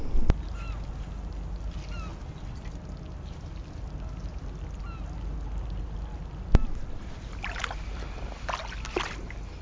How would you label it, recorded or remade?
recorded